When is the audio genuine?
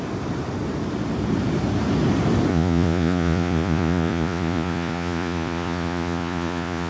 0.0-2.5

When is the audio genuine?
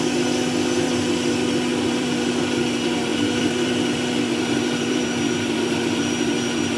0.0-1.7; 2.3-3.1; 6.1-6.8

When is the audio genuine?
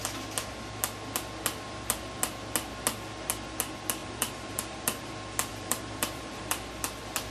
0.0-4.0; 5.1-5.5; 6.7-7.3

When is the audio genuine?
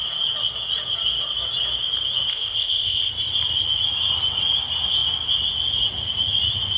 0.0-2.3; 3.1-6.8